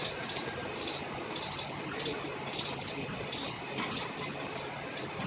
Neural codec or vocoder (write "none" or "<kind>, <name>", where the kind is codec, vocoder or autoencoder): none